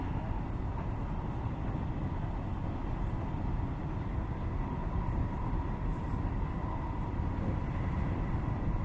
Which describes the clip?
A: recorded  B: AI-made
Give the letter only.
A